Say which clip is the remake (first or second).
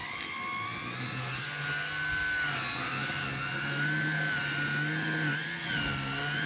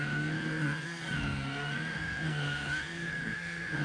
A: second